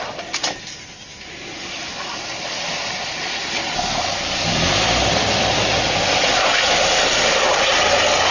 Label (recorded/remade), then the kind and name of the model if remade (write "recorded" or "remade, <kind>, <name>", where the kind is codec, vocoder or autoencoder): recorded